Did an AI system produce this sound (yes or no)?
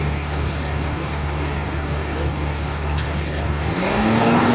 yes